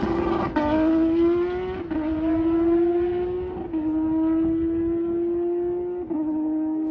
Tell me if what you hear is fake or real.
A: real